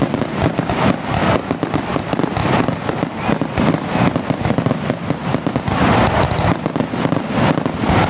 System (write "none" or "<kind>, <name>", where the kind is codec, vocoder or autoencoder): none